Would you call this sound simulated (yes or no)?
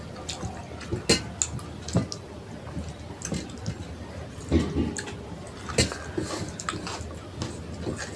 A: no